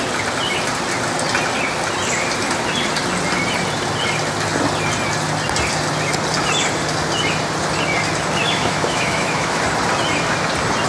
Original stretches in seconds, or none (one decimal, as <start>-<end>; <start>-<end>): 0.0-8.4; 9.6-10.9